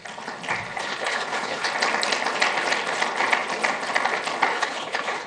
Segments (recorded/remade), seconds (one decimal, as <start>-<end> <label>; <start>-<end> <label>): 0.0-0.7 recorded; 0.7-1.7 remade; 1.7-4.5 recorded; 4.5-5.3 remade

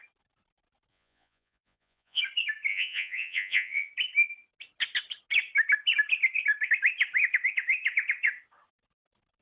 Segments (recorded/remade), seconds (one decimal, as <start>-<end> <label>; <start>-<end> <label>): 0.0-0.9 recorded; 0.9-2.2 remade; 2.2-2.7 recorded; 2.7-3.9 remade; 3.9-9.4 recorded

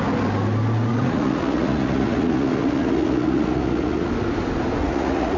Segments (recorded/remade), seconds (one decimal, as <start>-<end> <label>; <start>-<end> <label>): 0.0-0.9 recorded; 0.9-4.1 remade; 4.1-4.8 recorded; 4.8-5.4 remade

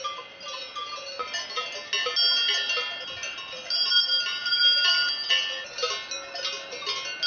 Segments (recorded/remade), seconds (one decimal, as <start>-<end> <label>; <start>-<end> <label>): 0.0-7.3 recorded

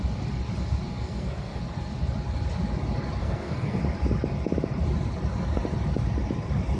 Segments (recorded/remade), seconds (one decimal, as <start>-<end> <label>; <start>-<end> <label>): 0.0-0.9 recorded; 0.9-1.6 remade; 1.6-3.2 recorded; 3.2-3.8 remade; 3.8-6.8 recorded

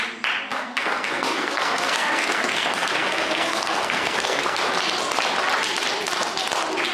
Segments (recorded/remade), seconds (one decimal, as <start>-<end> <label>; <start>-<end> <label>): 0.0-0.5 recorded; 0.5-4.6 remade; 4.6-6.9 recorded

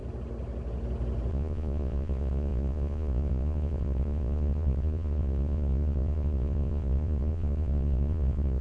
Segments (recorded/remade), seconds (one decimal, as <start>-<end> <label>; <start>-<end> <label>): 0.0-1.3 recorded; 1.3-8.6 remade

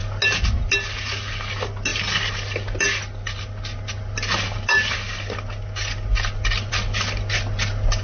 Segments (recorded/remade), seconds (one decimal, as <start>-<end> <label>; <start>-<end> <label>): 0.0-8.0 recorded